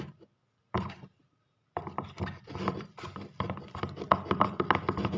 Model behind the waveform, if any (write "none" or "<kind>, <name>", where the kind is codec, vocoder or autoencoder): none